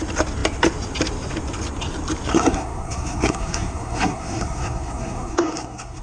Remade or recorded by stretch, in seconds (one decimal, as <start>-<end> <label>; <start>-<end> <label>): 0.0-2.3 recorded; 2.3-6.0 remade